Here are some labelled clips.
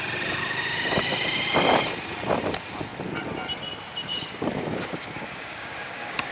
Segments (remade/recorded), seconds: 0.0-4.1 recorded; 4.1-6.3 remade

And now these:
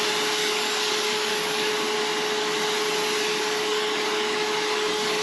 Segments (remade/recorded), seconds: 0.0-0.4 recorded; 0.4-1.7 remade; 1.7-3.3 recorded; 3.3-5.2 remade

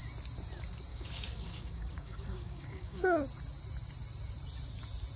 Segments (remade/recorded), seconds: 0.0-0.9 recorded; 0.9-3.0 remade; 3.0-5.2 recorded

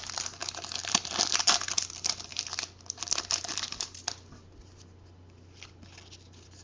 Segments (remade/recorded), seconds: 0.0-6.6 recorded